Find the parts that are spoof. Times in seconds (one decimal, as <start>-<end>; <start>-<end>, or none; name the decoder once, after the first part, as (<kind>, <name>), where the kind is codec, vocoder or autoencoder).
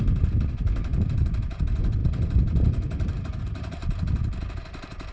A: 0.0-3.8 (vocoder, BigVGAN v2); 4.5-5.1